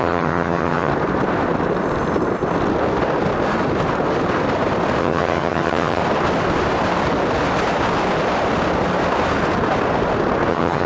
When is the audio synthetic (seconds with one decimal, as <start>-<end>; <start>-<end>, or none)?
0.0-0.9; 5.0-6.0; 10.5-10.9